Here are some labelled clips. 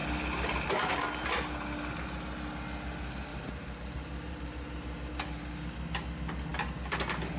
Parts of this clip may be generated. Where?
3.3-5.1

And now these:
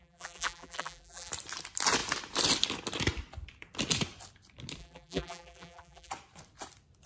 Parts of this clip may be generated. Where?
0.0-1.3; 4.8-6.1

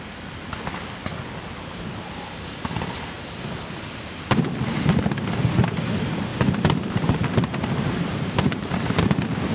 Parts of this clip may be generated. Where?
6.3-8.9

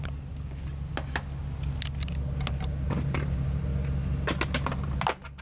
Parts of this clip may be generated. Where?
0.0-0.7; 3.1-3.7